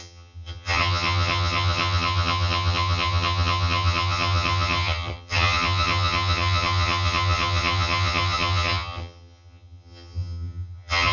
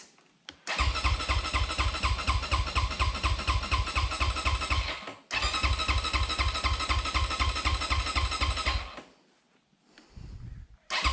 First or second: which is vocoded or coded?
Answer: first